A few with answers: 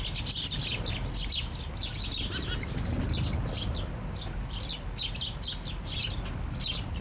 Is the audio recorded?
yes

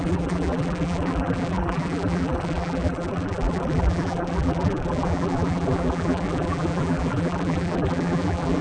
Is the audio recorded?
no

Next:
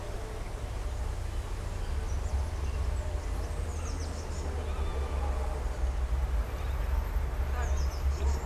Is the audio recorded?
yes